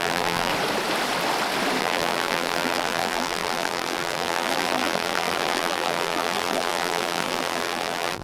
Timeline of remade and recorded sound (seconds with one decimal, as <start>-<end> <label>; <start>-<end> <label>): 0.0-0.5 remade; 0.5-1.8 recorded; 1.8-8.2 remade